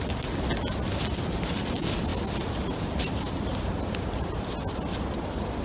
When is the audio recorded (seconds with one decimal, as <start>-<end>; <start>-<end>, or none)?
0.0-5.6